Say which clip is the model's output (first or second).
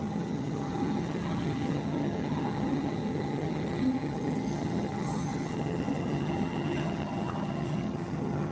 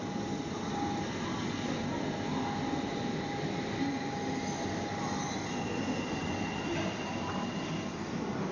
first